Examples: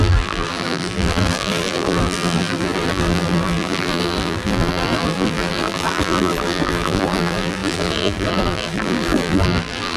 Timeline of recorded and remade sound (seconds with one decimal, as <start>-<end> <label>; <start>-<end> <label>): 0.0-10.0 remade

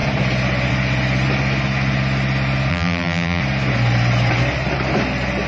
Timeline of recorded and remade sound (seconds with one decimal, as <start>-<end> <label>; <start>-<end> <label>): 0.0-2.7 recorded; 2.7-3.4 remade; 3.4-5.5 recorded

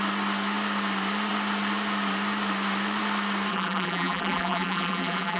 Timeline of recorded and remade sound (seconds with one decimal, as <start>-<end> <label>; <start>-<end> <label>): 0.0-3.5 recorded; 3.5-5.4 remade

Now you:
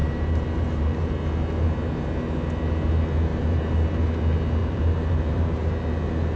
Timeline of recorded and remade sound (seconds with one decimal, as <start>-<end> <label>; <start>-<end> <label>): 0.0-1.1 remade; 1.1-3.3 recorded; 3.3-4.0 remade; 4.0-4.6 recorded; 4.6-5.7 remade; 5.7-6.4 recorded

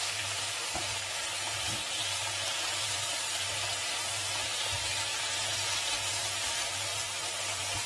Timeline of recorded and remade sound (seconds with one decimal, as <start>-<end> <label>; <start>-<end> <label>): 0.0-7.9 remade

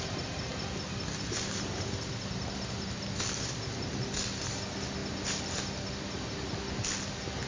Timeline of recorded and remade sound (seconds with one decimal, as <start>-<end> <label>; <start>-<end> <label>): 0.0-7.5 recorded

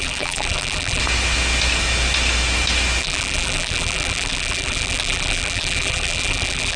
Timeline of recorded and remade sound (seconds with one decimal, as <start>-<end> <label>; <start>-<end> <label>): 0.0-1.0 remade; 1.0-3.0 recorded; 3.0-6.8 remade

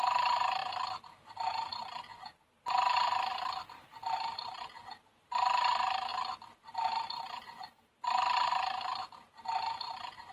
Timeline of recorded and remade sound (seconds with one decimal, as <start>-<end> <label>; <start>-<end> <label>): 0.0-4.0 recorded; 4.0-4.6 remade; 4.6-6.1 recorded; 6.1-10.3 remade